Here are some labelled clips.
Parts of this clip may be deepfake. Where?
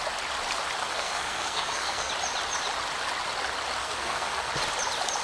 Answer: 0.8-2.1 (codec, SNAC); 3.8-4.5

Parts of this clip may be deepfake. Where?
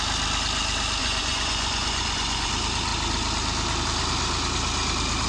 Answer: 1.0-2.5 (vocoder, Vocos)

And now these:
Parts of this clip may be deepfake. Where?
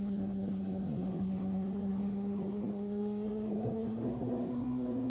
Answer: 0.0-5.1 (codec, SNAC)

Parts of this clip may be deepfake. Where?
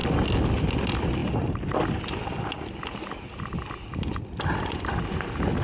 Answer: none